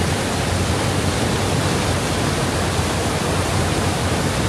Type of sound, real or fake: real